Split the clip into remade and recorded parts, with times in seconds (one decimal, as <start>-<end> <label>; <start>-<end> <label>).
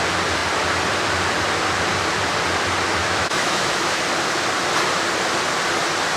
0.0-3.0 recorded; 3.0-4.0 remade; 4.0-6.2 recorded